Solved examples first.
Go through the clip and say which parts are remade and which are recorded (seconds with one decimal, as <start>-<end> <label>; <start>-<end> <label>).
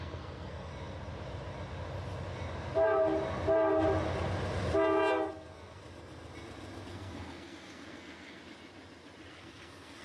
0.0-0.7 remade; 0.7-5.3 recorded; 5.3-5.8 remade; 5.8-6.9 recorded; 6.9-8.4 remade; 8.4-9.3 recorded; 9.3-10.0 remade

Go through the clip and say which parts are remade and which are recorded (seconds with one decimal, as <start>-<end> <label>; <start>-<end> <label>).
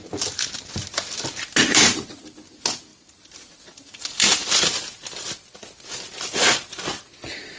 0.0-7.6 recorded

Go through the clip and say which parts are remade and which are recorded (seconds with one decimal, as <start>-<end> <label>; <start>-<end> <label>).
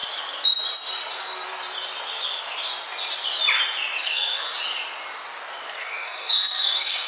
0.0-4.0 recorded; 4.0-4.5 remade; 4.5-5.8 recorded; 5.8-7.1 remade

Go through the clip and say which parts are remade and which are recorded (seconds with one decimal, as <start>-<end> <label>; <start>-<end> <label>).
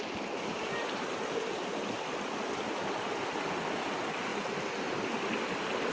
0.0-5.9 recorded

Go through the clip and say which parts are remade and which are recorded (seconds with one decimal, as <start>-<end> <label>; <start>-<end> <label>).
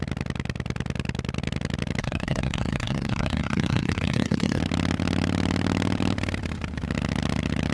0.0-2.0 recorded; 2.0-4.6 remade; 4.6-7.7 recorded